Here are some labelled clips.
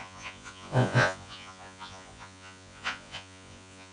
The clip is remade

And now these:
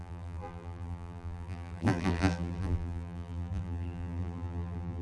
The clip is remade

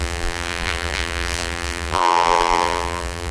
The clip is remade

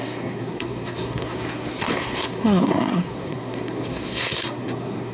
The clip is remade